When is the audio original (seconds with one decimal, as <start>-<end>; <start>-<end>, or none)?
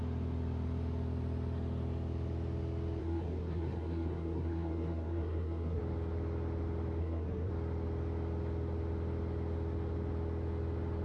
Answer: 0.0-3.0; 5.8-7.0; 7.5-11.0